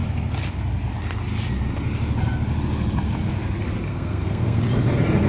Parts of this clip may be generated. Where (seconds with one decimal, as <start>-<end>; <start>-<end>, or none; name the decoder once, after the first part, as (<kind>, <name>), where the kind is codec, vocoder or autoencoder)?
3.9-4.6 (codec, SNAC)